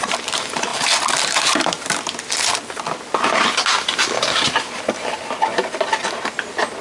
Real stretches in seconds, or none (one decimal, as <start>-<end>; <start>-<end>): 0.0-6.8